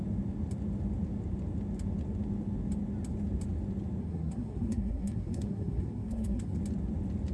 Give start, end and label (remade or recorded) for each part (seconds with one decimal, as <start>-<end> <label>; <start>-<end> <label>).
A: 0.0-4.0 recorded; 4.0-6.6 remade; 6.6-7.3 recorded